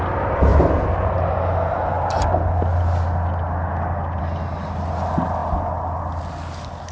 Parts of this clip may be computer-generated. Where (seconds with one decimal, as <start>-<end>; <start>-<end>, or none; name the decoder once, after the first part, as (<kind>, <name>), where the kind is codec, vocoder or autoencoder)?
none